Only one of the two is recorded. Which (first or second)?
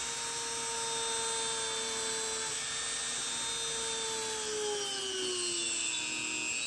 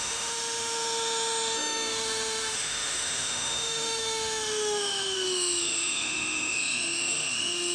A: first